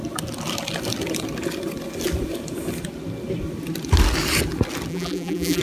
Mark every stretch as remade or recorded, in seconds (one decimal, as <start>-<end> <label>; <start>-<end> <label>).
0.0-4.9 recorded; 4.9-5.6 remade